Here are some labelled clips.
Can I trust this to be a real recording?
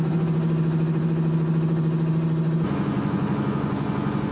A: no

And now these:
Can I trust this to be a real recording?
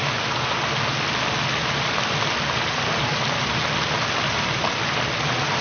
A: yes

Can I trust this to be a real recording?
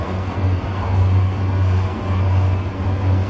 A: no